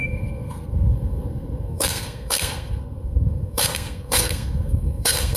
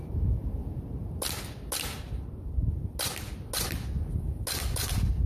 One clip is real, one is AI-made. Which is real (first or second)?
second